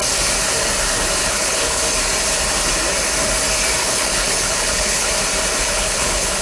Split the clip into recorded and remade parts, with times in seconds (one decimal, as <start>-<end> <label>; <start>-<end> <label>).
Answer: 0.0-1.2 recorded; 1.2-1.8 remade; 1.8-3.8 recorded; 3.8-5.1 remade; 5.1-5.6 recorded; 5.6-6.4 remade